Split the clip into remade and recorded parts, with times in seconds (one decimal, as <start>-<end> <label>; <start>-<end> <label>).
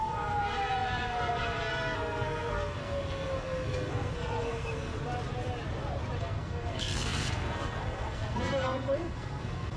0.0-4.9 remade; 4.9-6.2 recorded; 6.2-9.8 remade